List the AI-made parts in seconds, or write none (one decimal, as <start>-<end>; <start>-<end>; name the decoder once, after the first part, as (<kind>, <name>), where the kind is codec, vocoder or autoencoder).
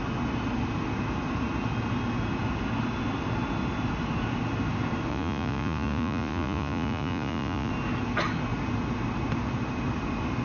5.1-7.7 (vocoder, Vocos)